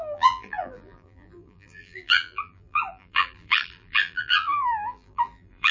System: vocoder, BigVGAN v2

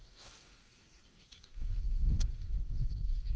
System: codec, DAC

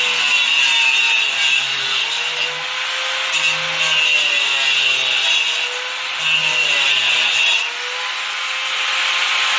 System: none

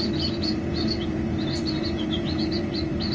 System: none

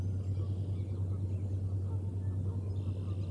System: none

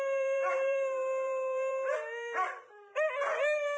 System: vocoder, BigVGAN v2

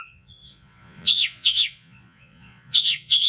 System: vocoder, Vocos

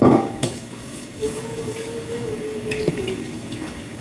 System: codec, DAC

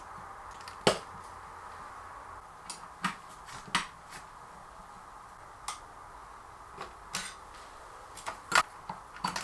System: none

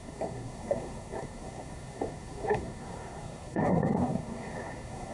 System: codec, SNAC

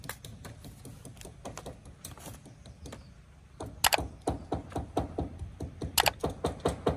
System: none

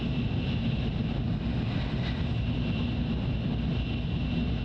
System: none